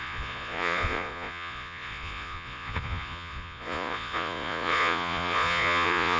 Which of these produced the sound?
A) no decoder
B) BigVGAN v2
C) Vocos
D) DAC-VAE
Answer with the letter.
C